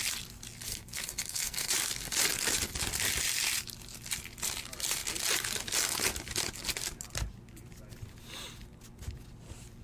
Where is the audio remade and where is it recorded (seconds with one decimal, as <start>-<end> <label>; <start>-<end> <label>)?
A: 0.0-0.7 recorded; 0.7-1.7 remade; 1.7-9.8 recorded